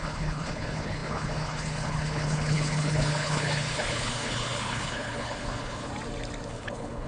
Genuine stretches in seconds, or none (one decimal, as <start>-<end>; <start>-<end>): 5.9-6.5